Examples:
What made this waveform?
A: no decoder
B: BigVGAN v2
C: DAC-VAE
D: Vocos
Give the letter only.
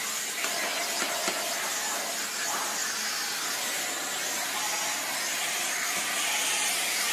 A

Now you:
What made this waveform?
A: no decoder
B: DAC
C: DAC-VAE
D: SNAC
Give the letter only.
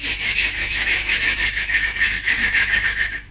C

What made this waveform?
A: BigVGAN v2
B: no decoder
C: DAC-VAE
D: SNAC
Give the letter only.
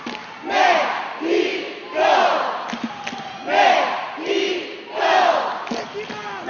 B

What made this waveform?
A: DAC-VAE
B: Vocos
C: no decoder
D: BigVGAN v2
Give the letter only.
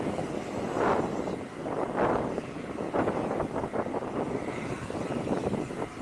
C